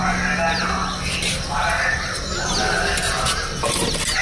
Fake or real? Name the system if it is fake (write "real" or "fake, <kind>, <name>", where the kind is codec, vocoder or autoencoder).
real